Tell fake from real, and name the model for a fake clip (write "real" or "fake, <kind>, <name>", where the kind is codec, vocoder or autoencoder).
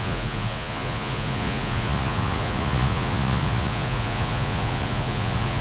fake, vocoder, Vocos